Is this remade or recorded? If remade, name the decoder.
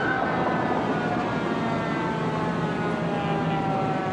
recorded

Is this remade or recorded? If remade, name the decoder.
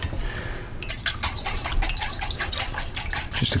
recorded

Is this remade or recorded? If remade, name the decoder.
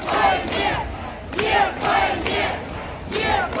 recorded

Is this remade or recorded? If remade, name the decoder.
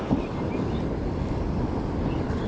recorded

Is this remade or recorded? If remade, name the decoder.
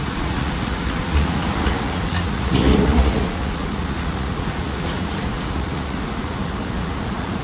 remade, vocoder, Vocos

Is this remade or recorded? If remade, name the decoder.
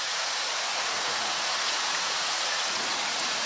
remade, vocoder, Vocos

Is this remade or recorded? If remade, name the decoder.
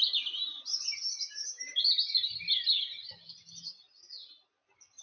recorded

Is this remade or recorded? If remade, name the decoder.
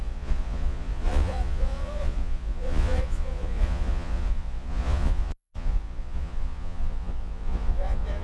remade, vocoder, Vocos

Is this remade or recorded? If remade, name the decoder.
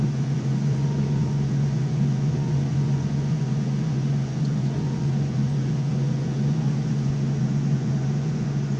remade, vocoder, Vocos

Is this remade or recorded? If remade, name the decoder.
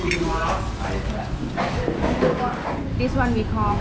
recorded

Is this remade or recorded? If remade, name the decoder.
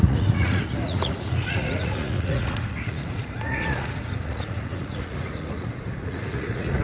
remade, vocoder, Vocos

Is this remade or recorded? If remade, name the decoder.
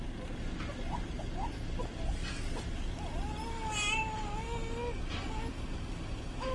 recorded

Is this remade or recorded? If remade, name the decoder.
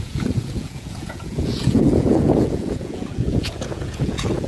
remade, vocoder, Vocos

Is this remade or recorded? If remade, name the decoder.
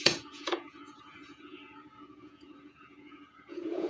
remade, vocoder, Vocos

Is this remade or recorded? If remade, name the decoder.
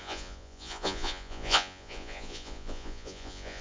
remade, vocoder, Vocos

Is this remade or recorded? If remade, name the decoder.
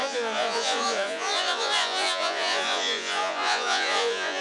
remade, vocoder, Vocos